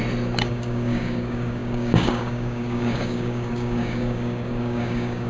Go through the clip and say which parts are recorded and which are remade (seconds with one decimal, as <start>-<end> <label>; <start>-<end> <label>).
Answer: 0.0-0.5 recorded; 0.5-5.3 remade